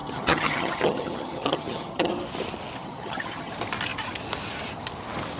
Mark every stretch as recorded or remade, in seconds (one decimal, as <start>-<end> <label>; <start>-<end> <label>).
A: 0.0-2.1 remade; 2.1-2.8 recorded; 2.8-3.5 remade; 3.5-5.4 recorded